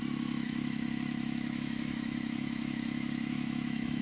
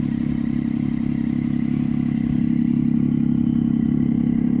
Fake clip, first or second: first